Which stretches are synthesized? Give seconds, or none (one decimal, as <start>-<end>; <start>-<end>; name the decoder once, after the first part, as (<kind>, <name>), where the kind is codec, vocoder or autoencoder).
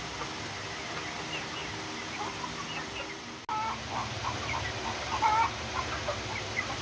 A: 4.0-4.8 (vocoder, BigVGAN v2)